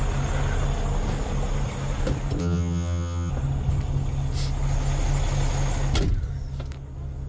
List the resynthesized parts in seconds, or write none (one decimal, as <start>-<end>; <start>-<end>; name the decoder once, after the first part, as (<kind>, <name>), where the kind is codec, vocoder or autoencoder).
2.4-3.3 (vocoder, HiFi-GAN)